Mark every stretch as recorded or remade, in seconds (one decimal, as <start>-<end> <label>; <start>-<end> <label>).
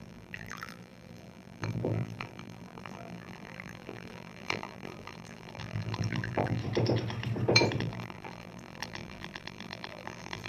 0.0-6.6 remade; 6.6-7.8 recorded; 7.8-10.5 remade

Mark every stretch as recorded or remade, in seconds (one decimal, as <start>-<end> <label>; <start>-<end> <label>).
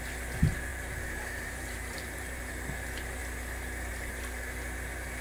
0.0-0.7 recorded; 0.7-2.4 remade; 2.4-5.2 recorded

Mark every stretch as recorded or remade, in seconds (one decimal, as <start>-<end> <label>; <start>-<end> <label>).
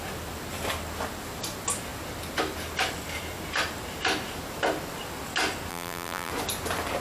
0.0-5.7 recorded; 5.7-6.3 remade; 6.3-7.0 recorded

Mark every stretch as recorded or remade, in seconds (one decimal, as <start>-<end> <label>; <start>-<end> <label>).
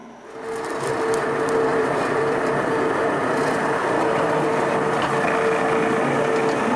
0.0-1.7 recorded; 1.7-2.6 remade; 2.6-6.8 recorded